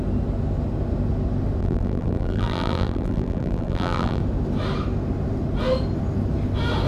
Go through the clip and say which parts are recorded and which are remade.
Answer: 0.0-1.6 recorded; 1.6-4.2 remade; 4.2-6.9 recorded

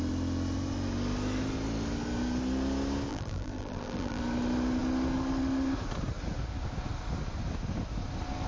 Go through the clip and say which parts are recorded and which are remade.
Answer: 0.0-3.1 recorded; 3.1-4.2 remade; 4.2-8.5 recorded

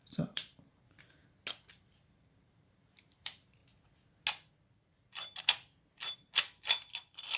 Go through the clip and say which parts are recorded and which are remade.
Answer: 0.0-1.2 remade; 1.2-1.7 recorded; 1.7-3.6 remade; 3.6-7.4 recorded